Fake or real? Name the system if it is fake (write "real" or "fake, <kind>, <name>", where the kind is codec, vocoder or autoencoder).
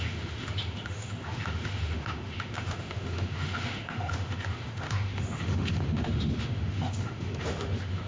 fake, autoencoder, DAC-VAE